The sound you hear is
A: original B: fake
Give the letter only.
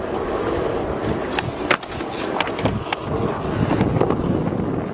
A